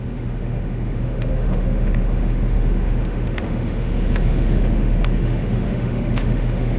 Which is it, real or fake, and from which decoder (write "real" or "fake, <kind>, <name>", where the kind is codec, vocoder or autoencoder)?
fake, autoencoder, DAC-VAE